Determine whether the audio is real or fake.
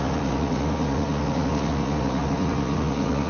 fake